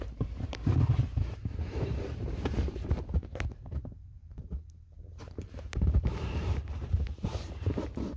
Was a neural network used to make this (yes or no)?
yes